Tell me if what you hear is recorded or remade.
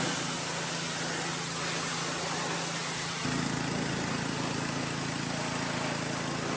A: recorded